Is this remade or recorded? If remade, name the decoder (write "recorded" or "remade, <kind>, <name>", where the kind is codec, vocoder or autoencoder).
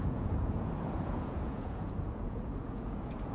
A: remade, vocoder, Vocos